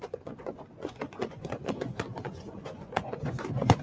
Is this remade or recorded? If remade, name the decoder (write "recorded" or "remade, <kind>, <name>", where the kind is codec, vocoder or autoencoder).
remade, vocoder, Vocos